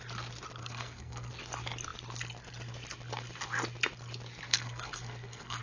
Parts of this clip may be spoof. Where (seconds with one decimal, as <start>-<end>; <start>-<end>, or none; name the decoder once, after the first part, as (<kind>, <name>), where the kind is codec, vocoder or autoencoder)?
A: 0.6-1.3 (codec, SNAC); 4.5-5.6